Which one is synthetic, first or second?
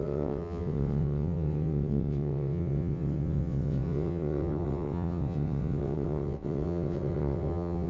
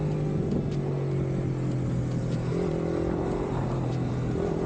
first